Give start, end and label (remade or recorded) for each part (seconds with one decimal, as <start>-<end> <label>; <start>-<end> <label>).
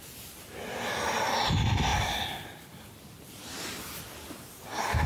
0.0-5.1 recorded